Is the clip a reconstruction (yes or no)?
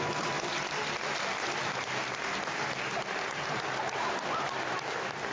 no